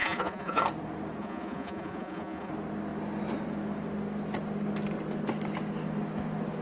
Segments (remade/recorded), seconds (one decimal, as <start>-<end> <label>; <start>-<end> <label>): 0.0-0.6 remade; 0.6-1.2 recorded; 1.2-2.5 remade; 2.5-6.6 recorded